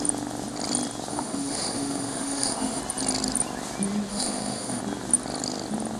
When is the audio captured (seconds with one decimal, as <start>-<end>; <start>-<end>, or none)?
0.0-1.1; 2.8-4.1; 4.8-6.0